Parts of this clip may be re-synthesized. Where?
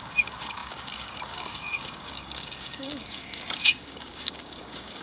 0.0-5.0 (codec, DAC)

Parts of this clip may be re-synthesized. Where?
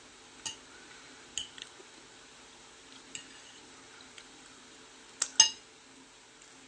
none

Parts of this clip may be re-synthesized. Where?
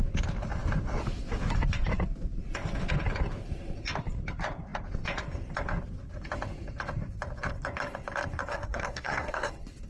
8.5-9.5 (codec, SNAC)